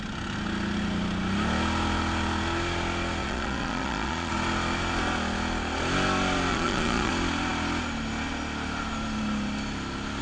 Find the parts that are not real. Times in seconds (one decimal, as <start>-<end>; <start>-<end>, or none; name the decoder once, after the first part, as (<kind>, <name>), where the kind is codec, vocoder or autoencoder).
3.2-4.3 (vocoder, Vocos); 6.5-7.1